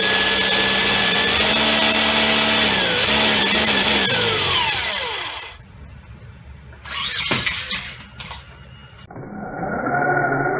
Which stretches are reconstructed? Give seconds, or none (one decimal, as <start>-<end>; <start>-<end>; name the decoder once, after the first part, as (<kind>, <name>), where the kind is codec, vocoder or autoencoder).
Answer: 0.8-1.5 (vocoder, Vocos)